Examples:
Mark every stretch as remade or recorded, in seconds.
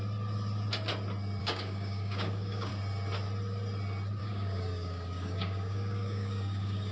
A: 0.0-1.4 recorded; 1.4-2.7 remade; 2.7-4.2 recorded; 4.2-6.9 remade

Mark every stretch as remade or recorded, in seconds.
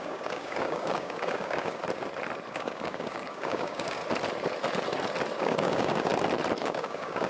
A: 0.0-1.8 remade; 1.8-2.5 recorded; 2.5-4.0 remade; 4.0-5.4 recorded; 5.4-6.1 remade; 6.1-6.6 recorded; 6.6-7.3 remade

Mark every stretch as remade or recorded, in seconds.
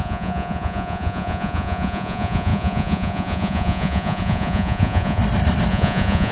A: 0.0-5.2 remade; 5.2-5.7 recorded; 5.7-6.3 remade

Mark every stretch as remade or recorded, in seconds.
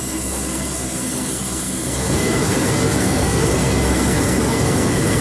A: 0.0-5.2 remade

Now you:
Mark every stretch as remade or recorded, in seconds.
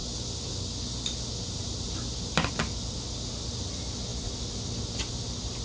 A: 0.0-5.6 recorded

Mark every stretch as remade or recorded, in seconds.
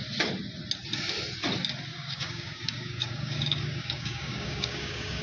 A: 0.0-1.9 recorded; 1.9-5.2 remade